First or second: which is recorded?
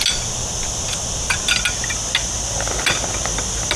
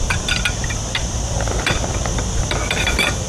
first